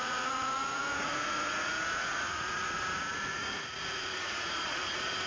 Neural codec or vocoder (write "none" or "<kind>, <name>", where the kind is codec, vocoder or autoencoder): vocoder, Vocos